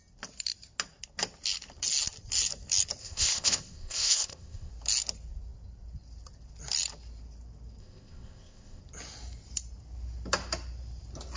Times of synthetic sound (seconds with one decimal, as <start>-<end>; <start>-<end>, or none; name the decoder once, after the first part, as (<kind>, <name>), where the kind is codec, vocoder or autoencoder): 3.0-4.7 (codec, ZipCodec); 7.8-8.8